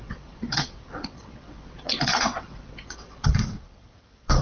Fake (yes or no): yes